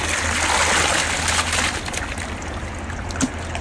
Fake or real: real